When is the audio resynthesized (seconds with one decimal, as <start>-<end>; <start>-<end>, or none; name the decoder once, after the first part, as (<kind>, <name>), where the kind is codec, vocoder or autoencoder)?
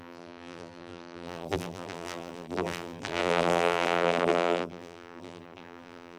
0.0-6.2 (vocoder, BigVGAN v2)